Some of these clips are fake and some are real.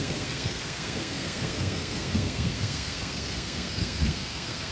fake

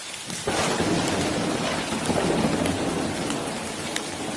real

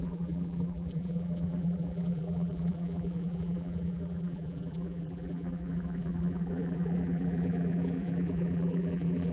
fake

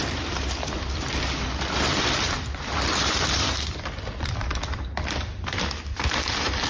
fake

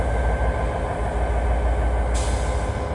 real